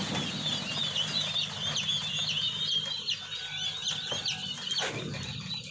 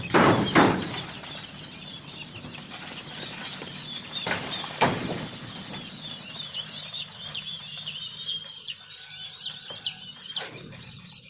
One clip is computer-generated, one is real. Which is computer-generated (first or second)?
second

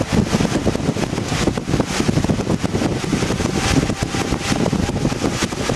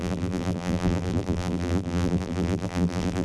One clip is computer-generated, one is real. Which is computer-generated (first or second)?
second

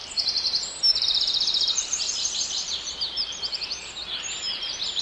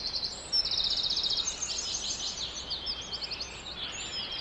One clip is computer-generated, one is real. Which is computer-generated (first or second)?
first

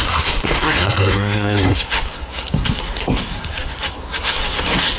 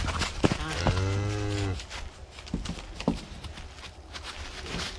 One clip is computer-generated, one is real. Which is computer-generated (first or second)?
first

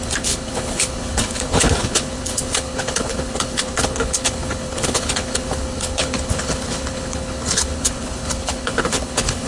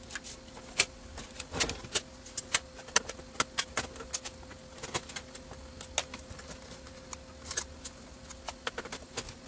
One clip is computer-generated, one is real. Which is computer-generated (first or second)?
first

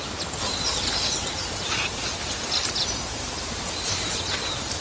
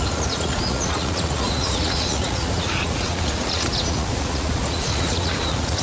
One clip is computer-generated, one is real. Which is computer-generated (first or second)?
second